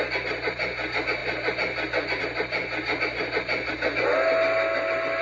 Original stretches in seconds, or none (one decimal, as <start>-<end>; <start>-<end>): 0.0-5.2